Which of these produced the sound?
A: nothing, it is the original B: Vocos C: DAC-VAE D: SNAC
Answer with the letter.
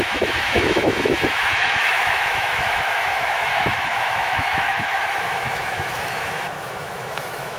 C